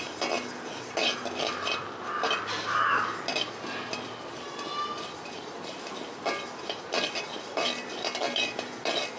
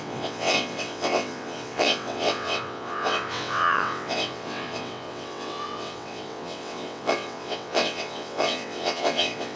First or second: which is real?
first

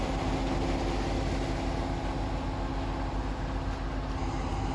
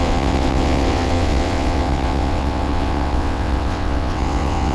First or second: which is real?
first